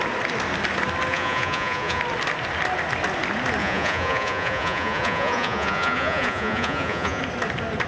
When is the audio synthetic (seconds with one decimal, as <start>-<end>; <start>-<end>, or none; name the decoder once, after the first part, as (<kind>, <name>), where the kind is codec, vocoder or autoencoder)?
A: 1.1-2.0 (vocoder, Vocos); 3.6-7.2